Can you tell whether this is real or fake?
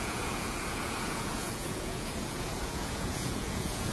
fake